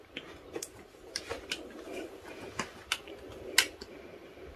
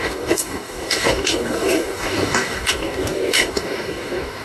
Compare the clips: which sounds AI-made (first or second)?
second